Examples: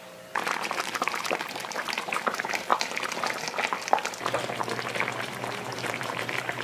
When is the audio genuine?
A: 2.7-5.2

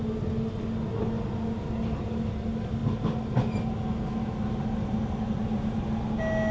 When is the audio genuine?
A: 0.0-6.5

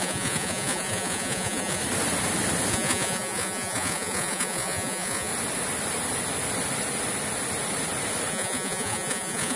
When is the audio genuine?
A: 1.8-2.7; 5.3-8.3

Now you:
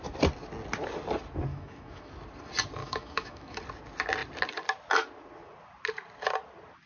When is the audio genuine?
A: 0.0-1.5; 2.1-2.8; 3.6-6.9

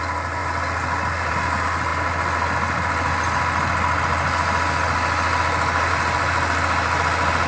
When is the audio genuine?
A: 0.0-7.5